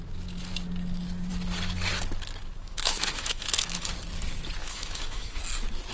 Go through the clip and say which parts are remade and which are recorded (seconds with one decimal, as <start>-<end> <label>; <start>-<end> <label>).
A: 0.0-2.6 recorded; 2.6-3.9 remade; 3.9-4.6 recorded; 4.6-5.4 remade; 5.4-5.9 recorded